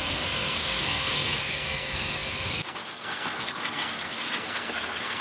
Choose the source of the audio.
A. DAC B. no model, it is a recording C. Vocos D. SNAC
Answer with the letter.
D